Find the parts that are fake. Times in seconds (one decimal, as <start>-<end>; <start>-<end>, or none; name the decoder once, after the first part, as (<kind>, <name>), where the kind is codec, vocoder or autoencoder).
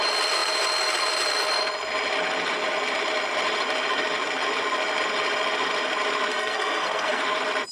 6.3-7.2 (codec, SNAC)